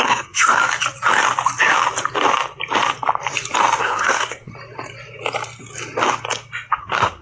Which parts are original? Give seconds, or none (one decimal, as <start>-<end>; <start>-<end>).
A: 0.6-3.8; 4.5-6.8